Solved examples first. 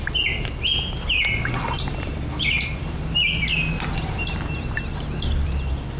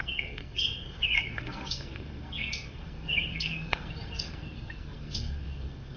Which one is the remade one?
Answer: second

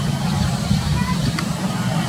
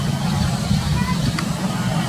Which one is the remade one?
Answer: first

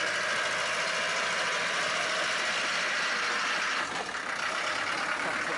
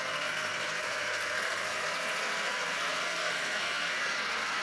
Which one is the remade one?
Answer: second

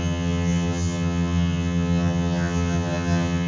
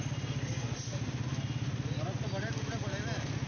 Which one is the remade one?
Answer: first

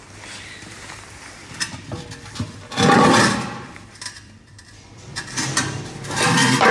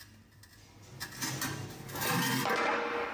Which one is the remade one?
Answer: first